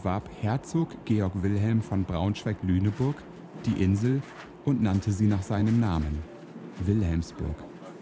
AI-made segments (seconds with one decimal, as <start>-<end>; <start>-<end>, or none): 0.0-5.6